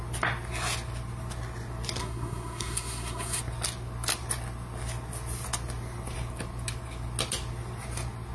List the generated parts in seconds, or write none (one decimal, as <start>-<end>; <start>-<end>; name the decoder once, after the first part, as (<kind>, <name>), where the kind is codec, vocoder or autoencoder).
2.0-3.4 (codec, SNAC)

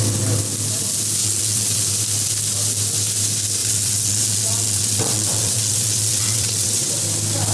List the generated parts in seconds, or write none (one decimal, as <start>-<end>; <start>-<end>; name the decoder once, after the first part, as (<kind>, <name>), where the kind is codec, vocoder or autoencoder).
1.2-1.8 (vocoder, WaveNeXt); 3.6-6.9

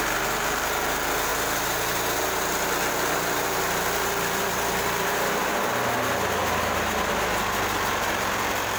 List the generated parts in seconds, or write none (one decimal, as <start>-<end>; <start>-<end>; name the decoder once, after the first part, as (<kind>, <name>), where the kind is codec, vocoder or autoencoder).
none

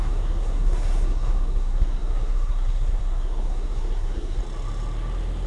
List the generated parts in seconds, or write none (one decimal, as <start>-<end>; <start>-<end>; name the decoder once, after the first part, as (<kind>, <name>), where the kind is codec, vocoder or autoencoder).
0.0-4.4 (codec, SNAC)

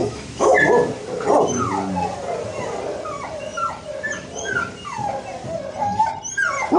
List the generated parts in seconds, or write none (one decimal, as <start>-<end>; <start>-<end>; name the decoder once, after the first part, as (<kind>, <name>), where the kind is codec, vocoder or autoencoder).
0.0-0.6 (autoencoder, DAC-VAE)

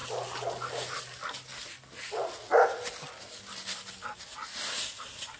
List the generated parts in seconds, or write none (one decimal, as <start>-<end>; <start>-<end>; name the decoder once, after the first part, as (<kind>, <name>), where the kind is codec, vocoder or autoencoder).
none

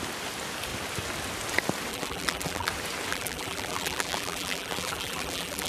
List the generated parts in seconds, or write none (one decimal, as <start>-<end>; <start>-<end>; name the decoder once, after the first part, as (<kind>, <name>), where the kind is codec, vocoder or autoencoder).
1.9-2.7 (vocoder, BigVGAN v2); 3.1-5.7